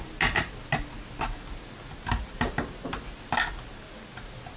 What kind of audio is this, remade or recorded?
recorded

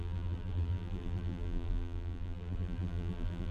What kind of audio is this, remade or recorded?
remade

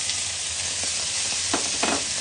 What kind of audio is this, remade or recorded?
recorded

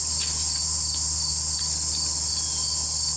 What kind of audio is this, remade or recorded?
recorded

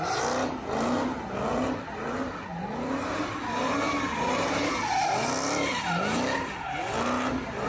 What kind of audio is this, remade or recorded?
recorded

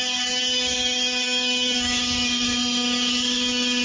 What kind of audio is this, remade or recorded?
remade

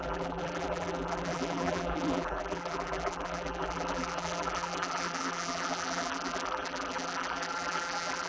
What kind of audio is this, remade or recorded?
remade